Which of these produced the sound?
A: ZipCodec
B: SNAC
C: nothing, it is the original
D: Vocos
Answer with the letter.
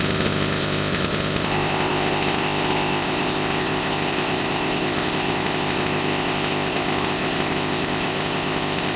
A